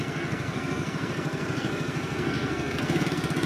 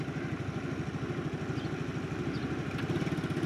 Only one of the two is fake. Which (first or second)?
first